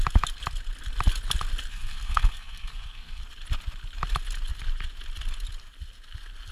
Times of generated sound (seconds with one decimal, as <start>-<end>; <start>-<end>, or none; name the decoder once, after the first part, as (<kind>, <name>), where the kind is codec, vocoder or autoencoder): 1.7-3.2 (codec, SNAC)